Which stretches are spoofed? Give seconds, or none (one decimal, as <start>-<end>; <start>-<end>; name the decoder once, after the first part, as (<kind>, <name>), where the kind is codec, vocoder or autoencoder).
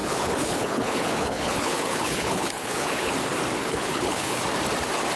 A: 0.0-3.1 (codec, HILCodec); 3.6-4.4